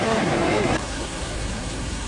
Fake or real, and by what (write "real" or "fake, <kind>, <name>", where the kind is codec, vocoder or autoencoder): fake, codec, SNAC